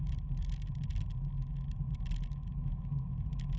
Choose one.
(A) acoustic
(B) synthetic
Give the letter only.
A